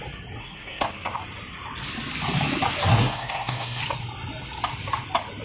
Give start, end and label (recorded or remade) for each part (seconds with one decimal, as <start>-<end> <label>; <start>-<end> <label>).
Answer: 0.0-0.4 recorded; 0.4-1.2 remade; 1.2-2.9 recorded; 2.9-3.8 remade; 3.8-5.4 recorded